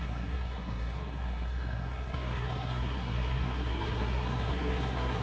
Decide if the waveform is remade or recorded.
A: remade